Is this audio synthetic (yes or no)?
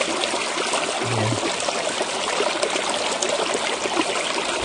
no